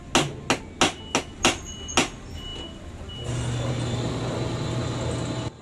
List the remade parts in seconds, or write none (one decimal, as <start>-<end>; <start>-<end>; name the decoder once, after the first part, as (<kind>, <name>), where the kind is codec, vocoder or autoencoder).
none